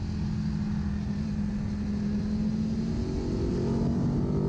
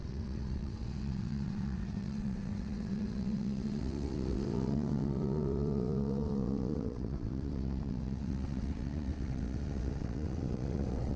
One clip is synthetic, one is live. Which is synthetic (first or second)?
second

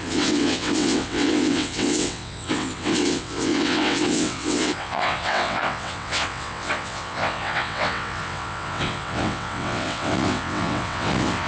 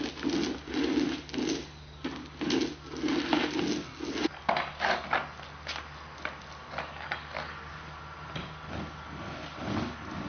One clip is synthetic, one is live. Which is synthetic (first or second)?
first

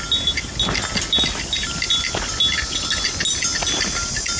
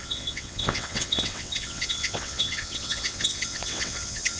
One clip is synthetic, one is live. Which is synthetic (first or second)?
second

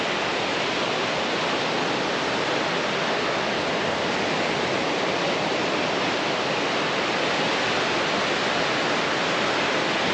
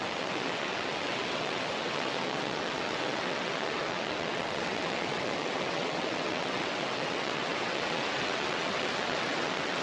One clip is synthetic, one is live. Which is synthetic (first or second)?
second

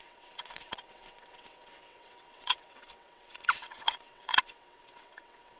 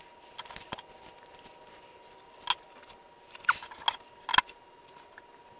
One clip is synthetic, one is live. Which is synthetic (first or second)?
first